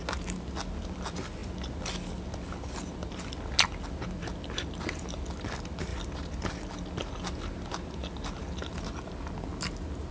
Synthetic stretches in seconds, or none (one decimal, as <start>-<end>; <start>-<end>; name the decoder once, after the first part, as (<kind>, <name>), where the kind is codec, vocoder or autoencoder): none